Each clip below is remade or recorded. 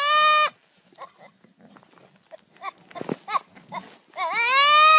recorded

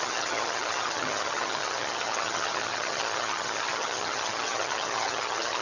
remade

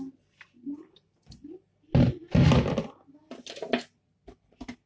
recorded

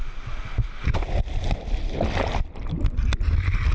recorded